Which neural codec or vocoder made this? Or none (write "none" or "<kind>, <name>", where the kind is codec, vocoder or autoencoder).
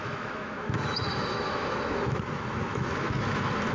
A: autoencoder, DAC-VAE